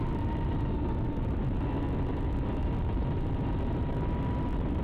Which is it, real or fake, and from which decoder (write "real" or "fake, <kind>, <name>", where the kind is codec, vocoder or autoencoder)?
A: real